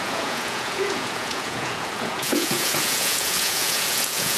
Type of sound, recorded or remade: remade